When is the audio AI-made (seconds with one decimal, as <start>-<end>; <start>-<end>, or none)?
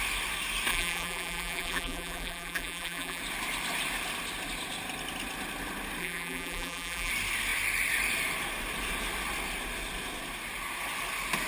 0.7-3.2; 6.0-7.1